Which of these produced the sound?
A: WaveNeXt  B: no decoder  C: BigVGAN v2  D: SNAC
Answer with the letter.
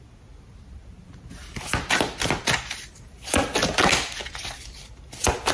B